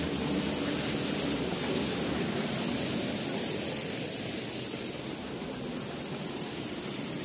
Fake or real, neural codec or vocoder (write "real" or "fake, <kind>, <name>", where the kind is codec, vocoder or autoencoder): real